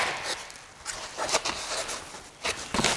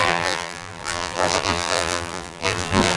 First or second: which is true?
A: first